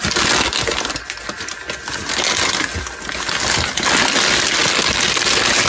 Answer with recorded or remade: recorded